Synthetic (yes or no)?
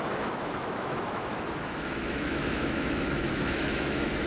yes